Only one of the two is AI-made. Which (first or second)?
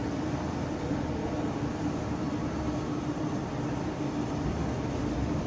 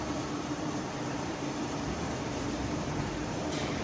second